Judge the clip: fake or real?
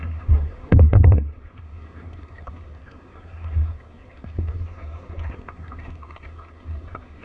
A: fake